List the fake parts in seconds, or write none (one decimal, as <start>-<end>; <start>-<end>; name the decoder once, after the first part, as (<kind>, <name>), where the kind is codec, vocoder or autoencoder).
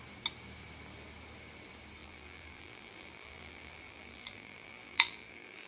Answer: 2.0-5.7 (vocoder, BigVGAN v2)